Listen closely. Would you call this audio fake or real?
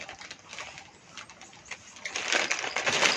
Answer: real